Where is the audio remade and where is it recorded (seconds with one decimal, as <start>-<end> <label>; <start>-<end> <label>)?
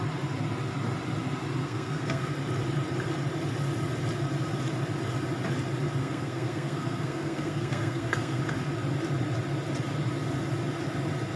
0.0-1.6 recorded; 1.6-2.3 remade; 2.3-6.0 recorded; 6.0-8.4 remade; 8.4-11.4 recorded